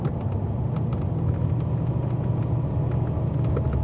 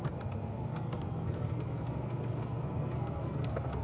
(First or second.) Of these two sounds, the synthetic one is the second